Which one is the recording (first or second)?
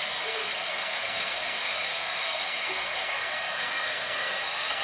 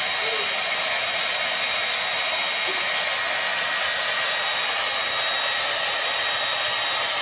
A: second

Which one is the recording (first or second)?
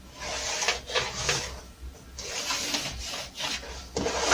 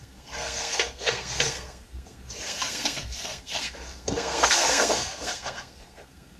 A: first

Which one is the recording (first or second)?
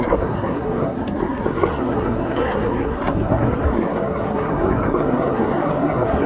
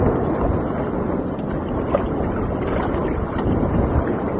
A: second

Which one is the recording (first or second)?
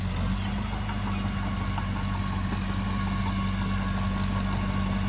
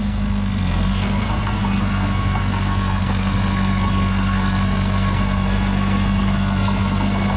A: first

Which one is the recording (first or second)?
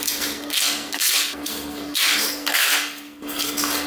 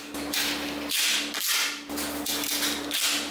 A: second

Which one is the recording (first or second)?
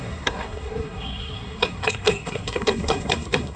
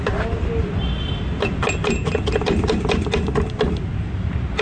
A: second